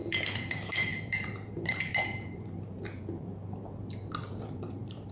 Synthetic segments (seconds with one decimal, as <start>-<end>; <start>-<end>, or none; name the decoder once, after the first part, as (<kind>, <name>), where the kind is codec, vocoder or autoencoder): 0.0-3.6 (vocoder, BigVGAN v2); 4.3-5.1

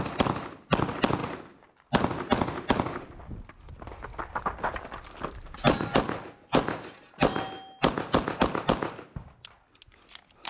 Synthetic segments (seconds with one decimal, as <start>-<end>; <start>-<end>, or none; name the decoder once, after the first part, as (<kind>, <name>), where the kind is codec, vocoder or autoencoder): none

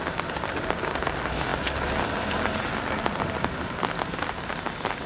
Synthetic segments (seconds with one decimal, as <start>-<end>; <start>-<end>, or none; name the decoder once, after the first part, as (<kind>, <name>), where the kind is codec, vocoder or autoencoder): none

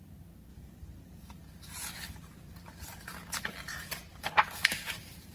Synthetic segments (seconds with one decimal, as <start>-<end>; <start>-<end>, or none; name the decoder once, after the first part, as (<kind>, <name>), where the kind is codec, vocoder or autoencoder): 4.1-5.3 (vocoder, BigVGAN v2)

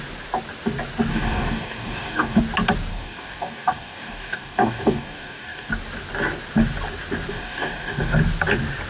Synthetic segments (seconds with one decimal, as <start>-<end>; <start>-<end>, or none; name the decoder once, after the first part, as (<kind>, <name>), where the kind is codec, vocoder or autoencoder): 1.1-2.4 (codec, DAC); 2.9-5.7; 7.3-8.2

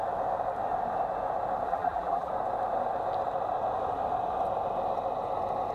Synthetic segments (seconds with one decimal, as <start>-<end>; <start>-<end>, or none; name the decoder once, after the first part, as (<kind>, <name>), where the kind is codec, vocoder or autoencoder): 1.7-2.3 (vocoder, BigVGAN v2)